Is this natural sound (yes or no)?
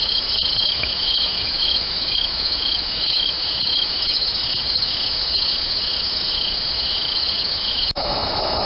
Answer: no